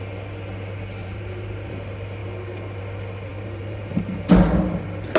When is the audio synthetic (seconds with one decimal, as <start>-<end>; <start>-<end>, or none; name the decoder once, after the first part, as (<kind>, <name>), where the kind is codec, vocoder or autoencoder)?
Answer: 1.0-1.7 (vocoder, BigVGAN v2); 3.3-3.9